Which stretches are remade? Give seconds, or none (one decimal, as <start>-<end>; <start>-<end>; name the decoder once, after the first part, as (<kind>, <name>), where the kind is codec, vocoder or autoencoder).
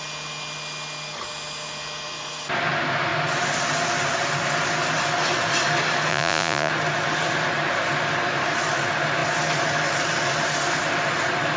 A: 6.1-6.7 (vocoder, Vocos)